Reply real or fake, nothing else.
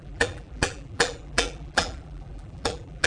fake